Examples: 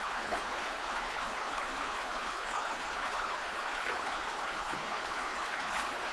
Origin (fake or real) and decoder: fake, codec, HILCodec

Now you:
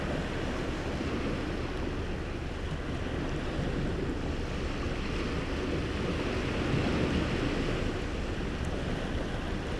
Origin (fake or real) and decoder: real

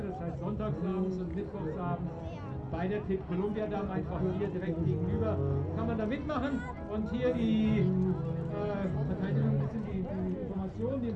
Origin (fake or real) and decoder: real